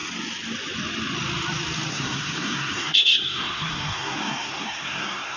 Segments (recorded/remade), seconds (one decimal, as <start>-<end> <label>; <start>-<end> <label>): 0.0-1.9 recorded; 1.9-5.4 remade